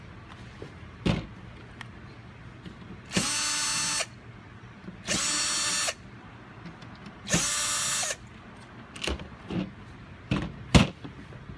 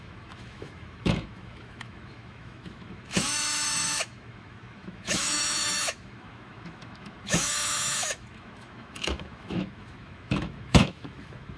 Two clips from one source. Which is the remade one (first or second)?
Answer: second